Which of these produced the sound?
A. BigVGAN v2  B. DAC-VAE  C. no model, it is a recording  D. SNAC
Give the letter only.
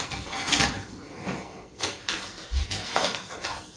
D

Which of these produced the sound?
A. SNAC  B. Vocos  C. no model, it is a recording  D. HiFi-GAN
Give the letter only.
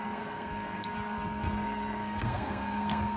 A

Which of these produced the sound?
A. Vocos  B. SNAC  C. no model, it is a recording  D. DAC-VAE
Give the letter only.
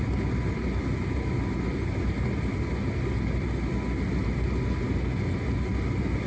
C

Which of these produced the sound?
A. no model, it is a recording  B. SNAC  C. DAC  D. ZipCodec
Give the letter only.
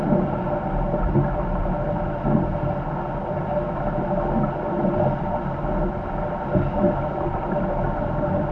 A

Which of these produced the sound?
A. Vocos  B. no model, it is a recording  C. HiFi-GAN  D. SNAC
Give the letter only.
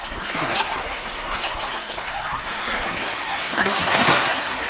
D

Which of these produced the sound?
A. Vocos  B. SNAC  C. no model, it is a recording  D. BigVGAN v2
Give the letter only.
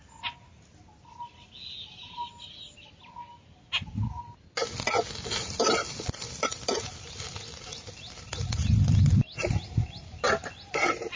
C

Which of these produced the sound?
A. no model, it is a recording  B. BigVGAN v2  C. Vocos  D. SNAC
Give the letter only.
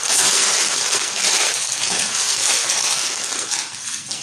D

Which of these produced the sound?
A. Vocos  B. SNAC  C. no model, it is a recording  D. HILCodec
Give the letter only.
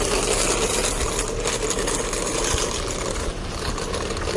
C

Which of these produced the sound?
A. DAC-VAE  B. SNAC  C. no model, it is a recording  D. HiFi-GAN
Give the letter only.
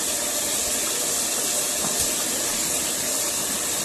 C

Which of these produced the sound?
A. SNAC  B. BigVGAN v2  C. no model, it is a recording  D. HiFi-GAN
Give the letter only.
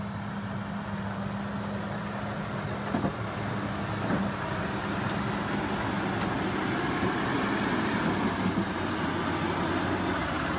C